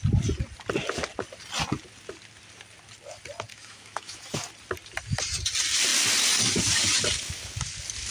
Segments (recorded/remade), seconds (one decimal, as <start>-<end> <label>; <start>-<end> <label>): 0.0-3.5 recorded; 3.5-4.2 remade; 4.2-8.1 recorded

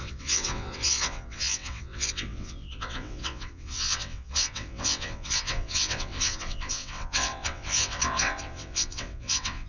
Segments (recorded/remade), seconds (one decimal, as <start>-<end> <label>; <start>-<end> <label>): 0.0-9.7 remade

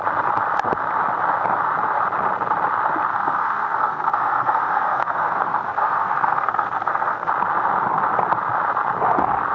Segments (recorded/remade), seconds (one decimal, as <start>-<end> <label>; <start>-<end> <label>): 0.0-3.1 recorded; 3.1-7.3 remade; 7.3-9.5 recorded

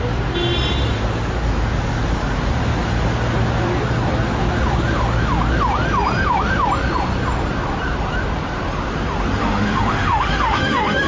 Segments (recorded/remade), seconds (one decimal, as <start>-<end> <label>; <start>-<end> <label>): 0.0-9.4 recorded; 9.4-11.1 remade